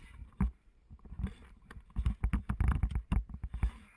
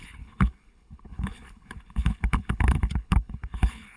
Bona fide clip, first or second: first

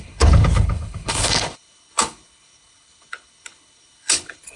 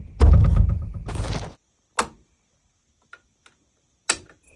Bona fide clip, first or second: second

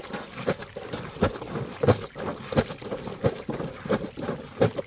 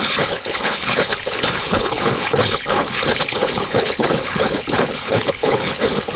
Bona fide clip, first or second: first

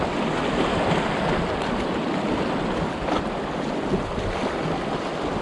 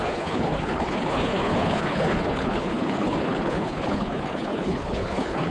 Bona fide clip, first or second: first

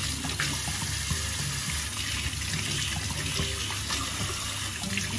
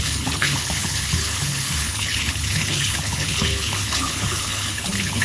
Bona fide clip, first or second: first